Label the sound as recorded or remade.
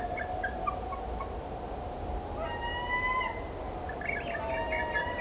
recorded